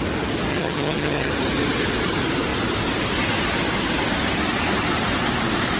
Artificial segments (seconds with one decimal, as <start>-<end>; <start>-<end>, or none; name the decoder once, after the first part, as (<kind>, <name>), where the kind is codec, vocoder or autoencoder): 0.5-1.3 (vocoder, HiFi-GAN)